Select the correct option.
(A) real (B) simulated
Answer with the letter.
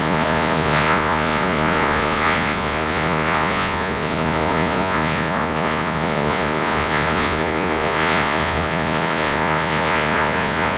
B